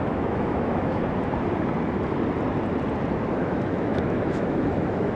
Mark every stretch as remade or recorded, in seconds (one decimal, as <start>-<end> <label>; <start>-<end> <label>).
0.0-1.0 remade; 1.0-3.3 recorded; 3.3-5.1 remade